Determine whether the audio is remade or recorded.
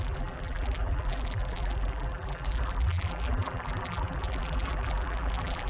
remade